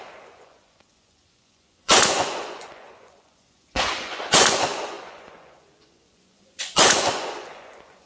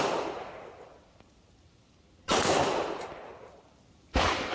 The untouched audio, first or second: second